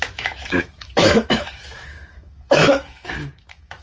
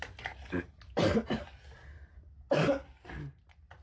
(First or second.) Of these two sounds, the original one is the second